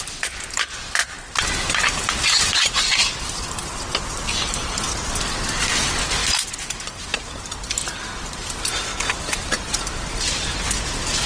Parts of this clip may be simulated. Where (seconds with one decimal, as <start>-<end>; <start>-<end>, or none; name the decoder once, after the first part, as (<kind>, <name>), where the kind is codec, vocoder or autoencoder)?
0.0-1.0 (vocoder, BigVGAN v2); 2.2-8.9; 10.2-11.3